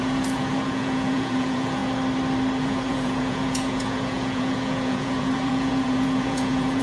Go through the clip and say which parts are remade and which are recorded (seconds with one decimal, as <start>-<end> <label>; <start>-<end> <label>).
0.0-1.8 remade; 1.8-2.6 recorded; 2.6-6.8 remade